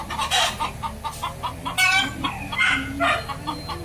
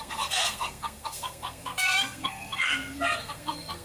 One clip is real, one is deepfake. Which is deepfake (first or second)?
second